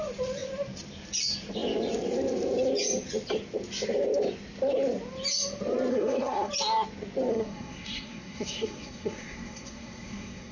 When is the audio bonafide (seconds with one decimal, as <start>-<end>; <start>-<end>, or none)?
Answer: 0.0-5.9; 6.5-7.3